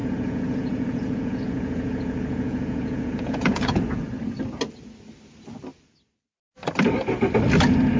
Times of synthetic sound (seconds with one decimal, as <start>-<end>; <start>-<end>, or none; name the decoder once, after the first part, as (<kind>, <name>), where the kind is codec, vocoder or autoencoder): 0.0-4.0 (vocoder, Vocos)